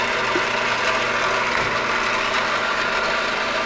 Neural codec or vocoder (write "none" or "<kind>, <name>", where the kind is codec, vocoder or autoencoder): none